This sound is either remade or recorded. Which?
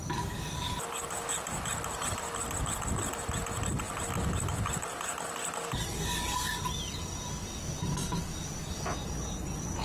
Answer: recorded